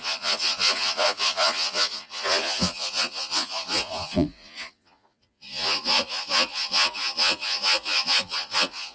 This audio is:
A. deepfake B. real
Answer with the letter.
A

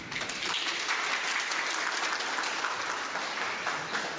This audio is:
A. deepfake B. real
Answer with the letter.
B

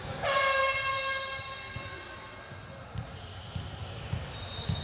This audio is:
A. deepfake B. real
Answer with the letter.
B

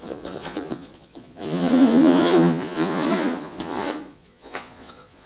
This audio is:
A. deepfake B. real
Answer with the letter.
A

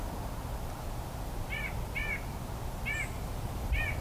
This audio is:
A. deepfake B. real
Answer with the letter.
B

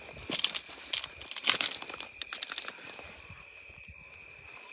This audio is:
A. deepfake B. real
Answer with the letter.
B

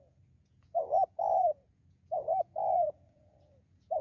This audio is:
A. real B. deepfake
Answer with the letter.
B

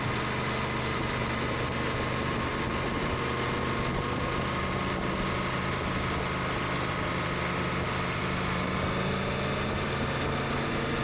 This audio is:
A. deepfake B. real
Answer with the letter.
B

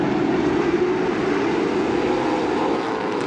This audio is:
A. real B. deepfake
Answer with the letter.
A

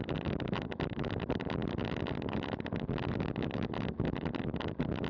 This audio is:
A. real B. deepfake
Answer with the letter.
A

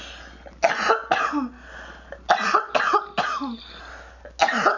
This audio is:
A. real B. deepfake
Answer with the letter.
A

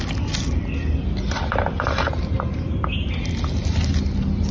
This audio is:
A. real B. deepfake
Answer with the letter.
A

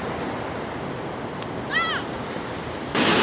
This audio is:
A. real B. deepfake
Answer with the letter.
A